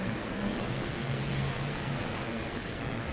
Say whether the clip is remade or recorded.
remade